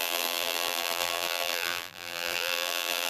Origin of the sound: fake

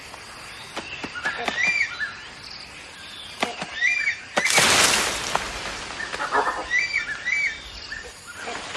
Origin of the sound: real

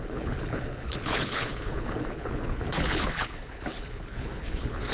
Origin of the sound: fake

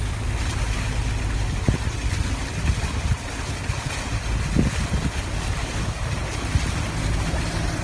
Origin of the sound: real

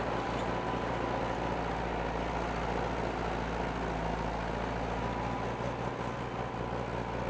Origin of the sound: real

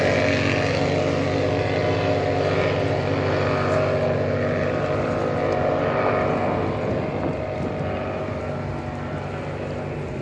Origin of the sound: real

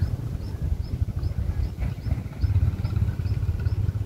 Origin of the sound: real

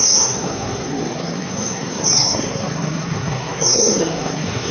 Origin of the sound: fake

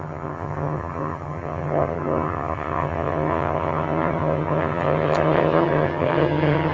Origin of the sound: fake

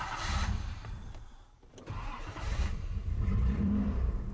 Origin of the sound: fake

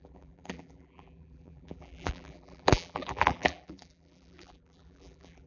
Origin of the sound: fake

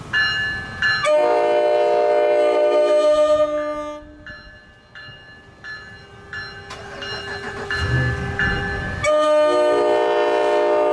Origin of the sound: real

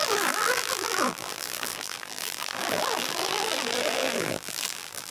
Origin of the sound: fake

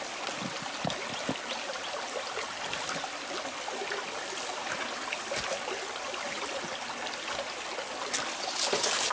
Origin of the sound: real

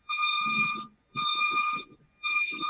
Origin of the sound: fake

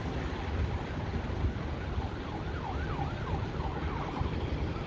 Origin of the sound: real